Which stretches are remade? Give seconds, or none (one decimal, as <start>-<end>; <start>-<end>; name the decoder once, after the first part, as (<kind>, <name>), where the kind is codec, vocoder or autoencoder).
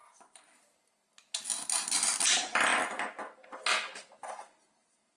none